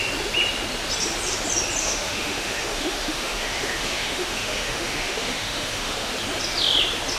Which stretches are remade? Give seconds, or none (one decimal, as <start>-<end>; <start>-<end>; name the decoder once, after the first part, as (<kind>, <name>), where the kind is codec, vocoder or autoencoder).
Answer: 1.8-6.1 (autoencoder, DAC-VAE)